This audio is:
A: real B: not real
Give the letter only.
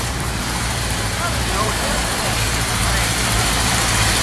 B